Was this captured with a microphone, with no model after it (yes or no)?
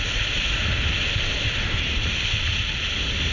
yes